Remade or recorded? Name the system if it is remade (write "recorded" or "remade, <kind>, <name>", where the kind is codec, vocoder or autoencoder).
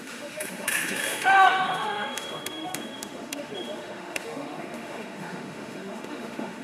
remade, autoencoder, DAC-VAE